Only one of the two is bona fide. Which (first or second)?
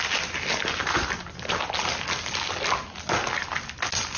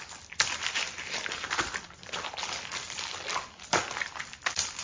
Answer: first